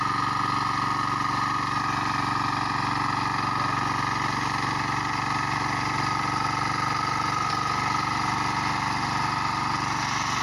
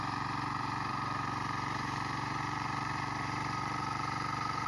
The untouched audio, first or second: first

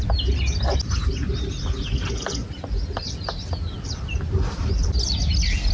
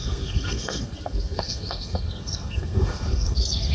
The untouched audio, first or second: first